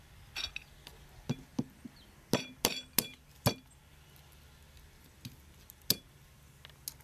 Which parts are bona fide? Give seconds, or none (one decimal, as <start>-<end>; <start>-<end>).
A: 0.0-7.0